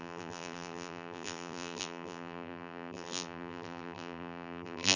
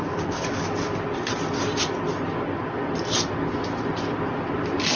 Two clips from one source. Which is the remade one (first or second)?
first